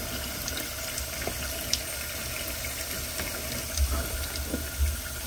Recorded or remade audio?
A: recorded